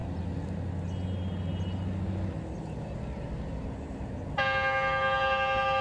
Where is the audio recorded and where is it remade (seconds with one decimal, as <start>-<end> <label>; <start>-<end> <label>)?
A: 0.0-5.8 recorded